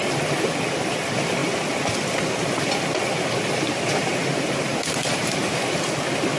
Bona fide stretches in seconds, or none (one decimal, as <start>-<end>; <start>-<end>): 0.0-6.4